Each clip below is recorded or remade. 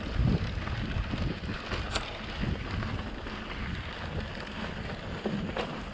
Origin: recorded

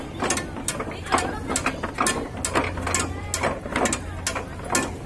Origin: recorded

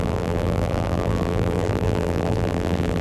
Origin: remade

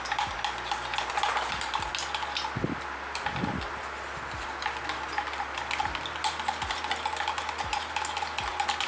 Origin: recorded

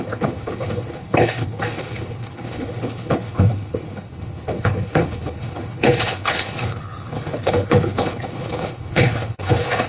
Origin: remade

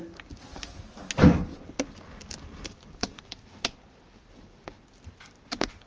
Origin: recorded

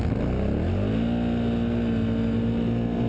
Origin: recorded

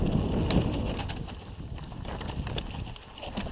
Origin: recorded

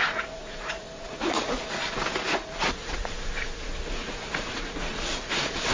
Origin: remade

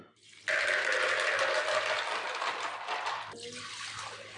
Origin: recorded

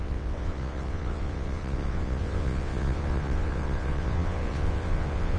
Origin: remade